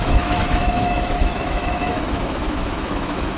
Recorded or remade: remade